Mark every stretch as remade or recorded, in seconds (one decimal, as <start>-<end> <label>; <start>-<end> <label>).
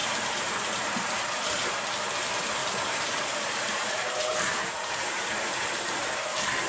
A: 0.0-1.7 remade; 1.7-2.6 recorded; 2.6-6.1 remade; 6.1-6.7 recorded